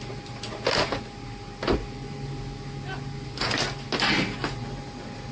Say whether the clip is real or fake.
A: real